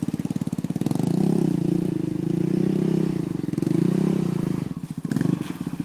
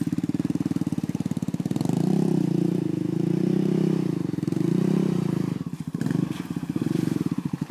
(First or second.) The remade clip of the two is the second